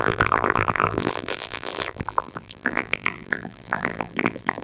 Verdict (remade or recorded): remade